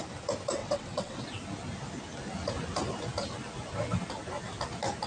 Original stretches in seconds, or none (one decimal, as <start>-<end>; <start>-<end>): 0.0-0.6; 1.2-5.1